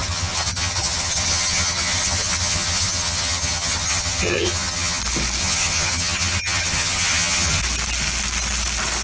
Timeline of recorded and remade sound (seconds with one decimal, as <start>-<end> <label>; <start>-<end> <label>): 0.0-5.0 remade; 5.0-5.4 recorded; 5.4-7.6 remade; 7.6-9.0 recorded